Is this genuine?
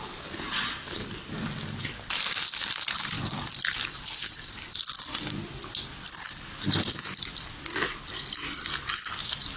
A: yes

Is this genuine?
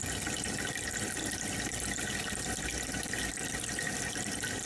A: yes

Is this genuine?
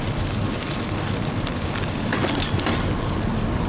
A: yes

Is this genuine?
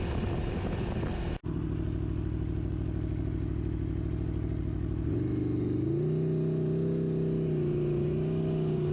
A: yes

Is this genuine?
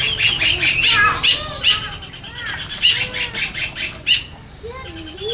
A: yes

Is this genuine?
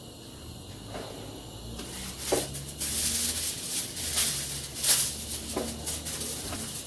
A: yes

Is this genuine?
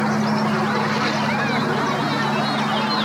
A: yes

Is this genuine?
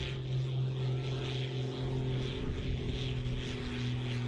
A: yes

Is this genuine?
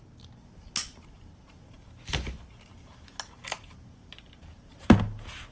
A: yes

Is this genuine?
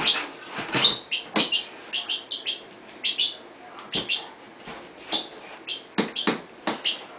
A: yes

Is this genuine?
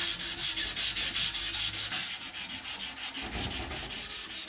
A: yes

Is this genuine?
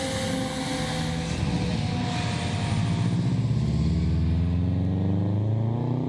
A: yes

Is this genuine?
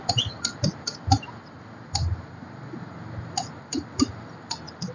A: yes